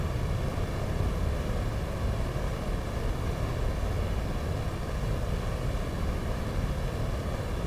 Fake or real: real